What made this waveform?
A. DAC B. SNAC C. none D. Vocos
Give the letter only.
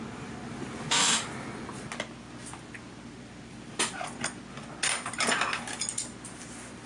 C